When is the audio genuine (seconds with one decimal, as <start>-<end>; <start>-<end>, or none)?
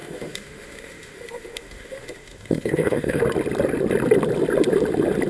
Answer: 3.2-5.3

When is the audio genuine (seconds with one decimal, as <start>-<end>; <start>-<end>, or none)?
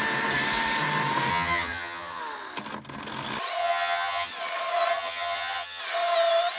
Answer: 0.0-1.3; 2.2-3.6; 4.3-4.9; 5.8-6.6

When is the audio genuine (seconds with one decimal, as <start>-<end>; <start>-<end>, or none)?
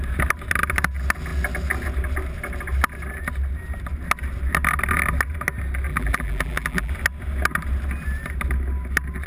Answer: 0.0-5.9; 6.9-9.3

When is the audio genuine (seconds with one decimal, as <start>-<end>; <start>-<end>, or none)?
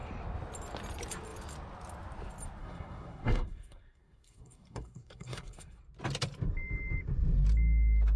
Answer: 0.0-2.6; 5.8-8.2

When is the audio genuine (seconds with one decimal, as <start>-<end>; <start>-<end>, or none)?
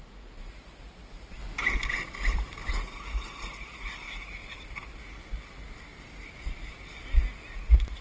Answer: 1.4-2.7; 4.4-7.5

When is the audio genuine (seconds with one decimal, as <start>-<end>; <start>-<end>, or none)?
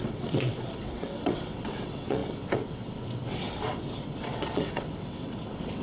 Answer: none